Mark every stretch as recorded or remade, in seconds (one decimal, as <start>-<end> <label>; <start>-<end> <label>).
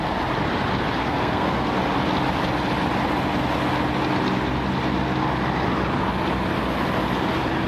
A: 0.0-1.0 recorded; 1.0-1.7 remade; 1.7-7.7 recorded